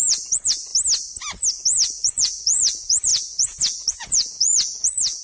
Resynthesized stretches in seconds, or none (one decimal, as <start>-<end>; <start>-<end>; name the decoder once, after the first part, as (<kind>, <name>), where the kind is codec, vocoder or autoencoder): 0.0-0.7 (vocoder, Vocos); 1.5-5.2